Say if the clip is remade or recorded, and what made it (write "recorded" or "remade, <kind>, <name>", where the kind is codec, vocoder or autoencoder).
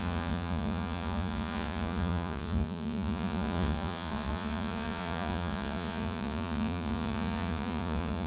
remade, vocoder, Vocos